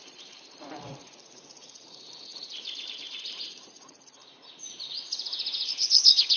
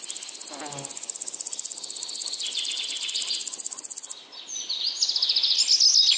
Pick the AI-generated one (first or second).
first